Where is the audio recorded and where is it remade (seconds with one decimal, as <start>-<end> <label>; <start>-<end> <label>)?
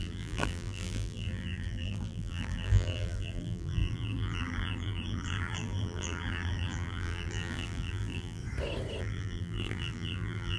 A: 0.0-8.4 remade; 8.4-9.0 recorded; 9.0-10.6 remade